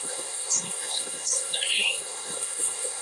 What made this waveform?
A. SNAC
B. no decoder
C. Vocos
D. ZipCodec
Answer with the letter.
A